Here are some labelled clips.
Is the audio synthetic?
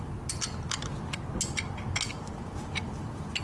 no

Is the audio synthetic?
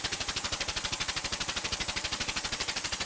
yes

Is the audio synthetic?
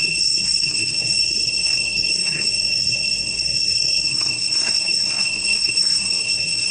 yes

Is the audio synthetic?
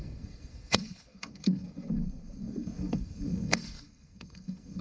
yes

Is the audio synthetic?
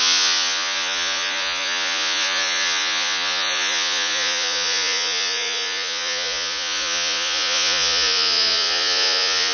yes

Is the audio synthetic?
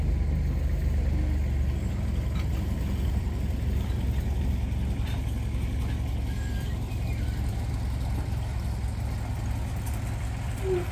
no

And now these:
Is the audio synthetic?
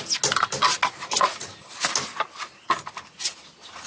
no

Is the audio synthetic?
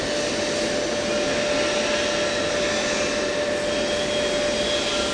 no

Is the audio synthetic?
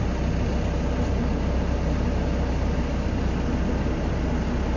no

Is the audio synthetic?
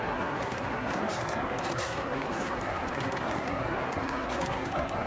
yes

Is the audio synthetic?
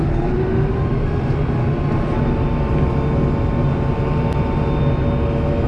no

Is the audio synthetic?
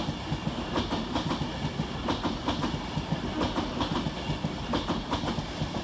no